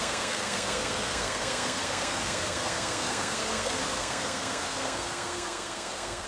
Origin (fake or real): fake